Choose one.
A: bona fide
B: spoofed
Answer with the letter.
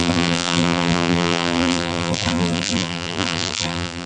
B